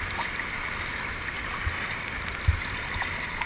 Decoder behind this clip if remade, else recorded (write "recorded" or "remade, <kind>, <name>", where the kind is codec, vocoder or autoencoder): recorded